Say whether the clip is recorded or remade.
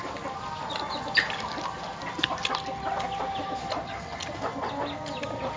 recorded